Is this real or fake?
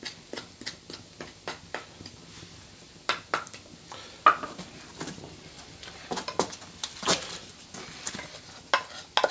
real